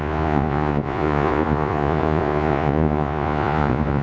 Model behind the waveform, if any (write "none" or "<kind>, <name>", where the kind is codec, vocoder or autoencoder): vocoder, Vocos